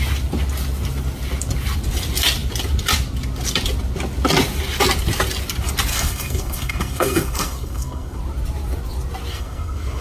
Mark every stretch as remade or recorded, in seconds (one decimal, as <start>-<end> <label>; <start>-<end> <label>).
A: 0.0-5.9 recorded; 5.9-8.2 remade; 8.2-9.3 recorded; 9.3-10.0 remade